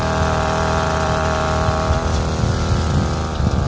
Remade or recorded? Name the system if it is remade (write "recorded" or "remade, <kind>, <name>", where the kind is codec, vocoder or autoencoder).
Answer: recorded